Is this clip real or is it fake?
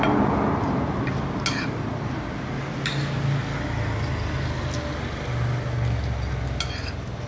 real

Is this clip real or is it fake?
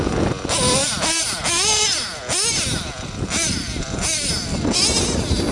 real